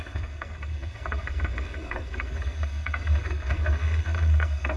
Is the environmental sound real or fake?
fake